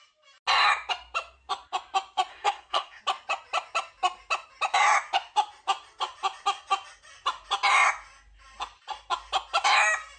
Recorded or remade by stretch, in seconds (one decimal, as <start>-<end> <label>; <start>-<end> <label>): 0.0-2.3 recorded; 2.3-3.0 remade; 3.0-10.2 recorded